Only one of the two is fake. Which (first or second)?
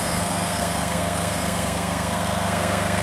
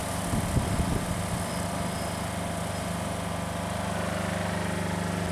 first